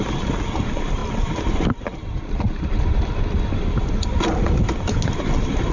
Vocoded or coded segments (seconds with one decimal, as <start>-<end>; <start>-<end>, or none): none